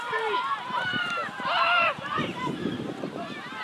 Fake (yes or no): yes